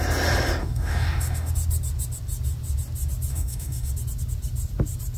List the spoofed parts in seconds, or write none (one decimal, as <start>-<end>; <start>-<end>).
0.6-1.5; 3.3-3.9